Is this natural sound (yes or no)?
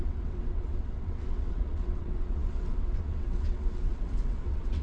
no